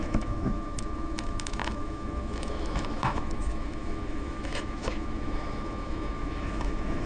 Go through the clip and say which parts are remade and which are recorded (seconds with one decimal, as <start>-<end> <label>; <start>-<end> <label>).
0.0-7.1 remade